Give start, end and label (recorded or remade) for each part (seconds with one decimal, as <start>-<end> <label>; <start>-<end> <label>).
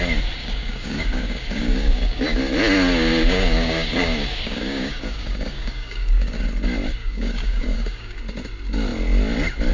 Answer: 0.0-0.4 recorded; 0.4-2.4 remade; 2.4-3.1 recorded; 3.1-6.4 remade; 6.4-7.0 recorded; 7.0-8.2 remade; 8.2-9.7 recorded